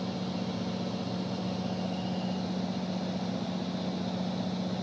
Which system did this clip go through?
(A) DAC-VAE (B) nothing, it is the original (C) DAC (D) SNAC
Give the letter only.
B